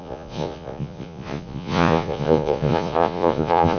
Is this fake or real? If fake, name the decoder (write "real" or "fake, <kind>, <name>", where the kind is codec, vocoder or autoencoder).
fake, vocoder, Vocos